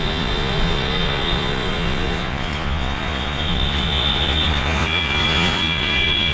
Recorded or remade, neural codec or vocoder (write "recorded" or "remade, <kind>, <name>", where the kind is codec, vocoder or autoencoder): remade, vocoder, Vocos